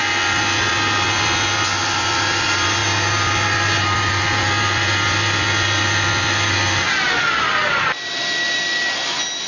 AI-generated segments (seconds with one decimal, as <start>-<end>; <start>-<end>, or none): none